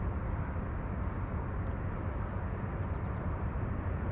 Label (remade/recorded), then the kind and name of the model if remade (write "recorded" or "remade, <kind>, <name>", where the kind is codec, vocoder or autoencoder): recorded